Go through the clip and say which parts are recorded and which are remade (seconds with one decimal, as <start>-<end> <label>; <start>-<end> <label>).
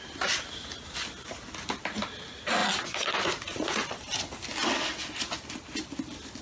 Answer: 0.0-6.4 recorded